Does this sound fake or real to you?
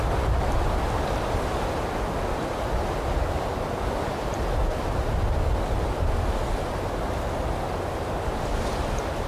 real